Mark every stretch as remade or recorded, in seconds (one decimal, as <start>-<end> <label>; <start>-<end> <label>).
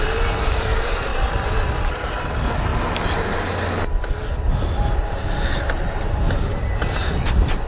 0.0-1.1 remade; 1.1-1.9 recorded; 1.9-2.7 remade; 2.7-7.1 recorded; 7.1-7.7 remade